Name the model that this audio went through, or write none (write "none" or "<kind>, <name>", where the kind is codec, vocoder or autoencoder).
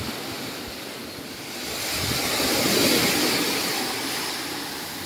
none